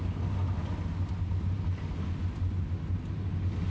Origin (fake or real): real